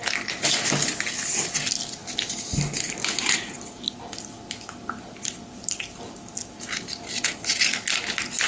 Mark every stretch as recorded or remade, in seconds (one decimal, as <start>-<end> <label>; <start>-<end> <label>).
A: 0.0-8.5 recorded